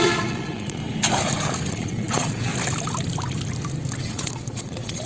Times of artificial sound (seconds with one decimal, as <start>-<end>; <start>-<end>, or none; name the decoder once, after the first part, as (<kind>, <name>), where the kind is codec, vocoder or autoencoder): 0.0-0.8 (vocoder, Vocos); 1.7-2.5; 4.0-5.1